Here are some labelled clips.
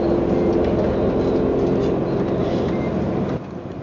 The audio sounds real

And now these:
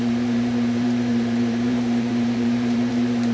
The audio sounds fake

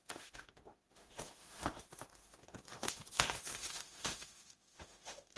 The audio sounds fake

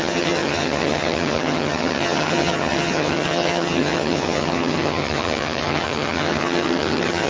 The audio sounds fake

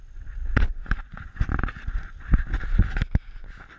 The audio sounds real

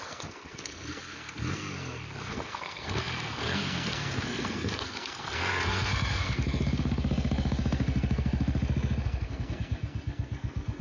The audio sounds fake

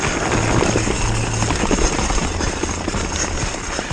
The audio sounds real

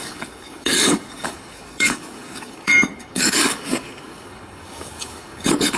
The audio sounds fake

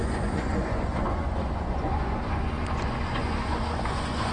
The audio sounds fake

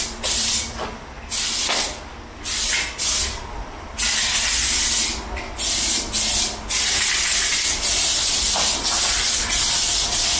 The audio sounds real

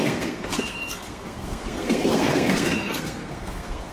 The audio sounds fake